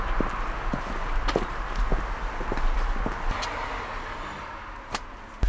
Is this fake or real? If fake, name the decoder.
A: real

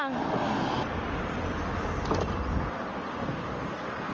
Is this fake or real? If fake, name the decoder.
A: real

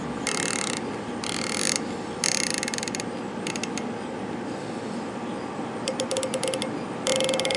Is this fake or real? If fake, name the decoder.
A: real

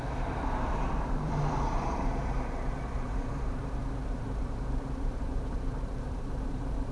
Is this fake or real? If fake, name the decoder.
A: fake, vocoder, BigVGAN v2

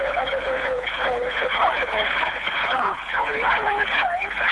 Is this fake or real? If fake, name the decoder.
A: fake, codec, HILCodec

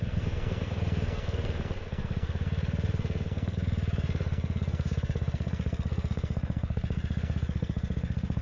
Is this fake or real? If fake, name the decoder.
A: fake, codec, SNAC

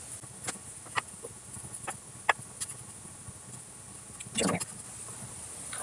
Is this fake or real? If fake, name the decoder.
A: real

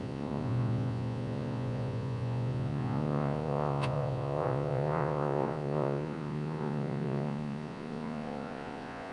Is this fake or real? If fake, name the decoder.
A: fake, vocoder, Vocos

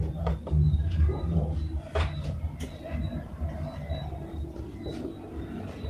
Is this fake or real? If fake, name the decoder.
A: fake, vocoder, BigVGAN v2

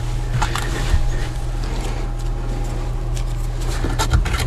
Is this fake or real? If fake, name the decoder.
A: real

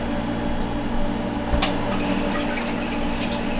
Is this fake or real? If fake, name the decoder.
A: real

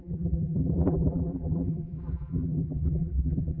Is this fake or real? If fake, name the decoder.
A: fake, vocoder, BigVGAN v2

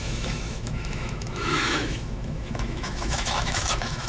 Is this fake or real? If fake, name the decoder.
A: fake, autoencoder, DAC-VAE